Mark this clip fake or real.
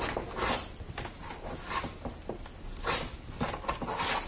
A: real